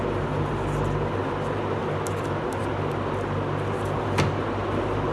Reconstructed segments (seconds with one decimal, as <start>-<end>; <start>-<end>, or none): none